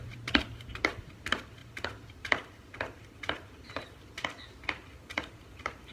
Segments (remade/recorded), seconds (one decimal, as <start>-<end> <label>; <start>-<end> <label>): 0.0-5.9 remade